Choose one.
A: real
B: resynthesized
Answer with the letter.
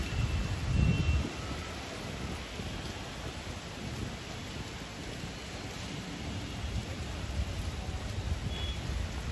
A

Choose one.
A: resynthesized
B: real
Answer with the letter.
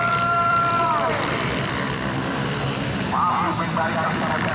A